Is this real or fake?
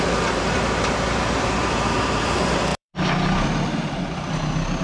fake